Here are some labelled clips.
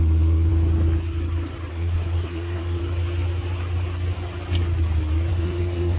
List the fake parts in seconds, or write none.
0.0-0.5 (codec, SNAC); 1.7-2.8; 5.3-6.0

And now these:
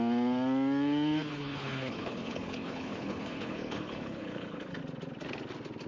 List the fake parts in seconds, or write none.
1.3-4.8 (codec, HILCodec)

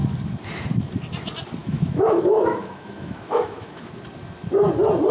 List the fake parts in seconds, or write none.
1.6-3.9 (autoencoder, DAC-VAE)